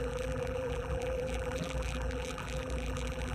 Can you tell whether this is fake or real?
fake